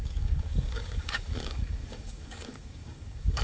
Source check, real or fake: fake